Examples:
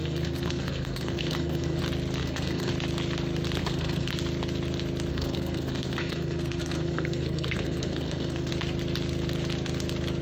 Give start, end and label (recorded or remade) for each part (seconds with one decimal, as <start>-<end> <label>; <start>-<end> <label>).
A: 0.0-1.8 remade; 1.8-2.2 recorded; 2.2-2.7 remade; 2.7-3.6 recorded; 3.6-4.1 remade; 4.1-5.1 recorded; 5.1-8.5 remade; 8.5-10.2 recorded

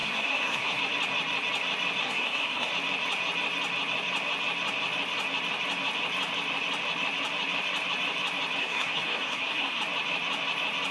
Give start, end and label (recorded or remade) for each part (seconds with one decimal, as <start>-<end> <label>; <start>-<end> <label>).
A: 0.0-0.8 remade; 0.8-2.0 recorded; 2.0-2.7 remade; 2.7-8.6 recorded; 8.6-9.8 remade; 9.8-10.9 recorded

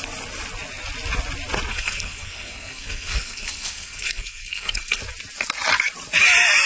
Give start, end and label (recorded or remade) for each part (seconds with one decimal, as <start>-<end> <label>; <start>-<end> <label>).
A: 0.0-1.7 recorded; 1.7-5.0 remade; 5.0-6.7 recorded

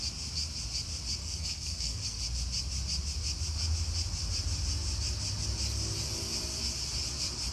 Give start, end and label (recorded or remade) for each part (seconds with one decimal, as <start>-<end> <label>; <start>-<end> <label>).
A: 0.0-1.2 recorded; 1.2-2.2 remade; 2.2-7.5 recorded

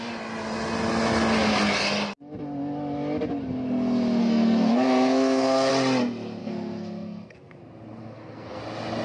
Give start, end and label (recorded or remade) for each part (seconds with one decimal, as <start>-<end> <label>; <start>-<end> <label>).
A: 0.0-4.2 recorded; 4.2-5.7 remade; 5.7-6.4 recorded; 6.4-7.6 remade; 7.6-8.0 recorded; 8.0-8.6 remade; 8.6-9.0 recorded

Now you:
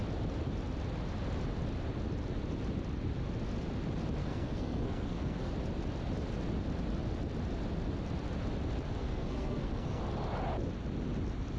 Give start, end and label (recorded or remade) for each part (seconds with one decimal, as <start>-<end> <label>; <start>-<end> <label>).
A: 0.0-4.2 recorded; 4.2-5.5 remade; 5.5-9.0 recorded; 9.0-10.0 remade; 10.0-11.6 recorded

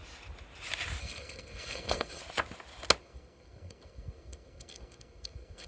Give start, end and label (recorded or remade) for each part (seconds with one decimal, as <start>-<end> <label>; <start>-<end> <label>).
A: 0.0-1.0 recorded; 1.0-2.2 remade; 2.2-3.0 recorded; 3.0-5.7 remade

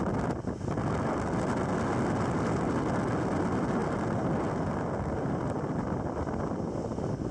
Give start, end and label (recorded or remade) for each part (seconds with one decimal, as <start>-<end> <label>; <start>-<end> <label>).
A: 0.0-7.3 recorded